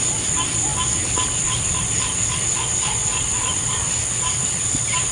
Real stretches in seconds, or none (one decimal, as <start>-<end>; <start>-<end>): 0.0-5.1